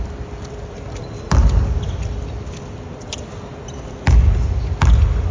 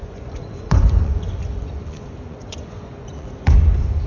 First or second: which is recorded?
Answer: first